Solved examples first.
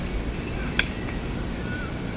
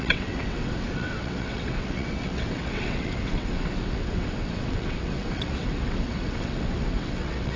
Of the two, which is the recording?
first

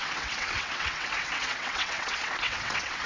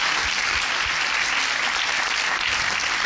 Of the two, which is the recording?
second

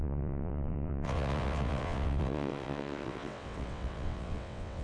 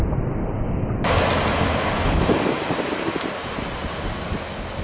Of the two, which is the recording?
second